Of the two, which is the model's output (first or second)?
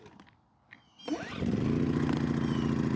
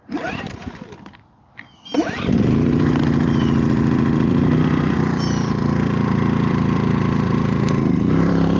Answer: second